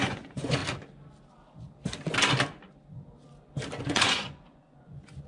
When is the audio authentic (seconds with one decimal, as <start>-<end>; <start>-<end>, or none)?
0.6-3.8